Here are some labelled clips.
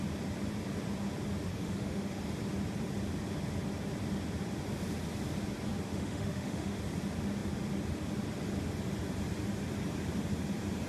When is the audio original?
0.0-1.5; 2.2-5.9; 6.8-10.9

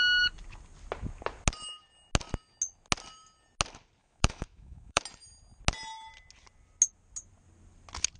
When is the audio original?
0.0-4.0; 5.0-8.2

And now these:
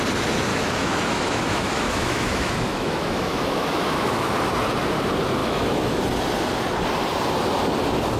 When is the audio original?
0.0-0.5; 4.3-5.4; 6.0-8.2